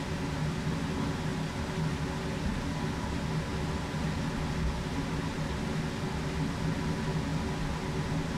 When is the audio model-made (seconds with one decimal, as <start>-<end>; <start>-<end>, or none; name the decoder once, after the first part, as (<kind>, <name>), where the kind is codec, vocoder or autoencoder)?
none